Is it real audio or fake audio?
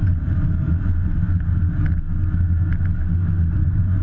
real